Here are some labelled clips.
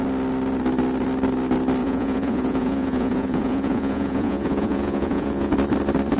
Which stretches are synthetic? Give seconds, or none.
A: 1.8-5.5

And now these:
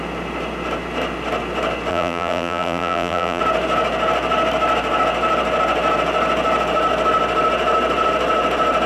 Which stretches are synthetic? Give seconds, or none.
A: 1.9-3.4

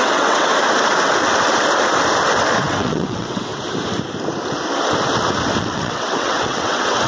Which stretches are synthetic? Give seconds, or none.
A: 0.0-0.5; 2.6-3.5; 5.6-7.1

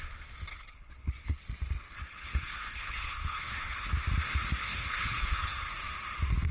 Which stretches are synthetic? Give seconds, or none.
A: 0.5-1.4; 2.1-3.9; 4.6-5.7